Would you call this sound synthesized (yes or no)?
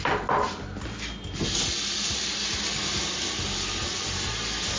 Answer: no